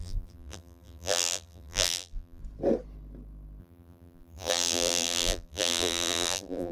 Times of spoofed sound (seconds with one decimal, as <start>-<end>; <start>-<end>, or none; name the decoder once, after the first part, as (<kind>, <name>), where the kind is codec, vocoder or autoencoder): 0.0-2.4 (vocoder, BigVGAN v2); 3.6-6.7